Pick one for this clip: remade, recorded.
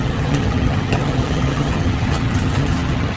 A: remade